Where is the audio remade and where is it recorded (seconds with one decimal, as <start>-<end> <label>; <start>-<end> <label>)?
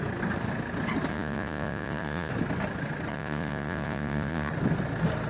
0.0-1.1 recorded; 1.1-2.3 remade; 2.3-3.1 recorded; 3.1-4.5 remade; 4.5-5.3 recorded